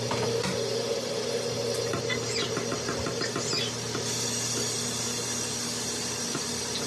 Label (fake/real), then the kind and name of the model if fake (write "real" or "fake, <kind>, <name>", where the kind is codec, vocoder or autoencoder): real